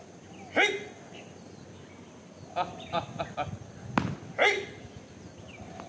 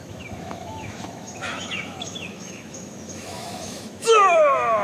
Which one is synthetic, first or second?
second